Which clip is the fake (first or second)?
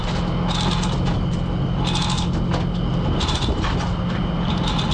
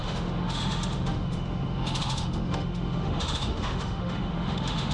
second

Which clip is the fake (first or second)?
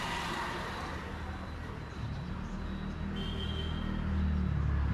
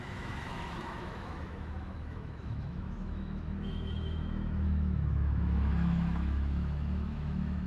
second